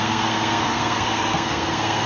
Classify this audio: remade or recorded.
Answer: remade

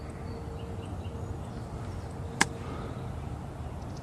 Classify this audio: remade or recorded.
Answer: recorded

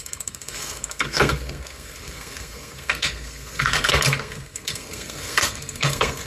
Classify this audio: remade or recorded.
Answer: remade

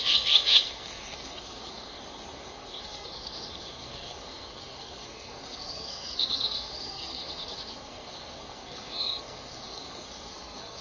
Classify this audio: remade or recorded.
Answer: remade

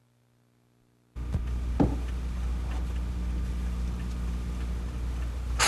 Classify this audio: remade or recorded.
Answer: recorded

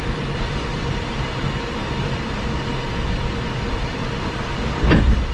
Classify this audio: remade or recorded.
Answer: recorded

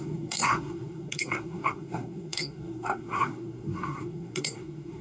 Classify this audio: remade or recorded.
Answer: remade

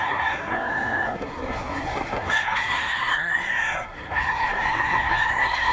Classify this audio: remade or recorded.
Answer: remade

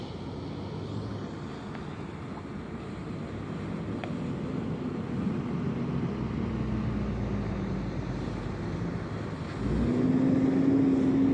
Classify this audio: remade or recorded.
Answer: recorded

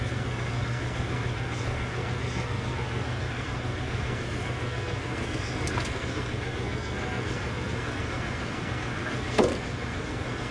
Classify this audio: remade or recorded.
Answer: remade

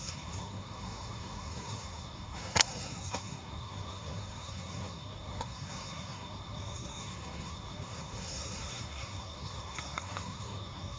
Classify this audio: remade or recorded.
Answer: remade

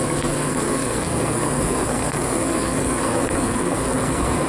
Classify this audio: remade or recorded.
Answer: remade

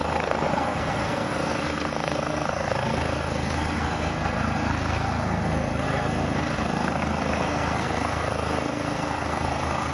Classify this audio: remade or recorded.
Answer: remade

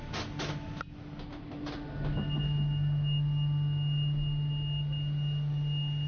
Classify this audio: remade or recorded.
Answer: recorded